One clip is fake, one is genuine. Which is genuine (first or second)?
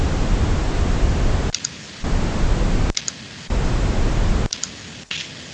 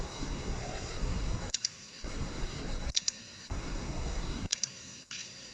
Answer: first